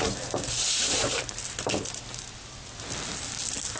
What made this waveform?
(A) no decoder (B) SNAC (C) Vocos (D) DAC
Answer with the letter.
A